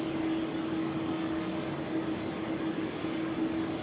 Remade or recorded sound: remade